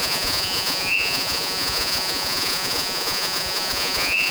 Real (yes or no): no